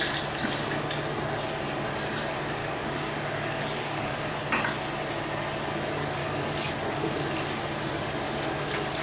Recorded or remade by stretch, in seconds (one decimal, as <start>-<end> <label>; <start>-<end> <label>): 0.0-2.6 recorded; 2.6-4.3 remade; 4.3-6.2 recorded; 6.2-6.7 remade; 6.7-9.0 recorded